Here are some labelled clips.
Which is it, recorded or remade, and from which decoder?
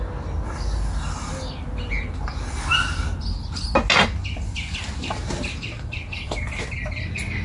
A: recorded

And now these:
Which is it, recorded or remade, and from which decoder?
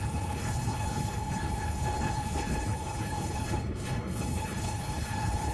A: remade, codec, HILCodec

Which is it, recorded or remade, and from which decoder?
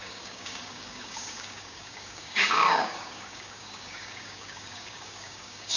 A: remade, codec, DAC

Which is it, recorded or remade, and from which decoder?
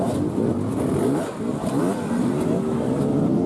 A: recorded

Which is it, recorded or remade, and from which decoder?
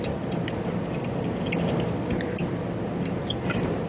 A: recorded